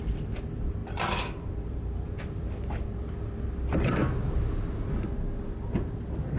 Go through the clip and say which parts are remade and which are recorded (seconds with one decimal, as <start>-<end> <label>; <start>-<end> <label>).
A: 0.0-4.0 remade; 4.0-6.4 recorded